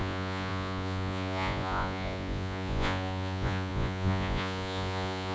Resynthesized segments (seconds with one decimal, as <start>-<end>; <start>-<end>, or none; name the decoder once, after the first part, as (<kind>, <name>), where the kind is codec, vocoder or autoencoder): 0.0-5.3 (vocoder, Vocos)